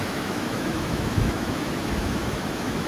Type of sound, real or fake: fake